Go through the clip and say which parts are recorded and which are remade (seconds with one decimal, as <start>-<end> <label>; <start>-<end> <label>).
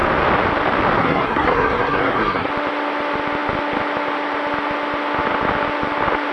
0.0-1.0 recorded; 1.0-2.5 remade; 2.5-6.3 recorded